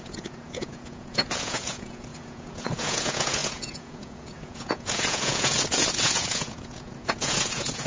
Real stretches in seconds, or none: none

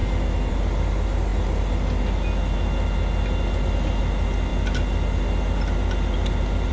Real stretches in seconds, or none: 0.0-6.7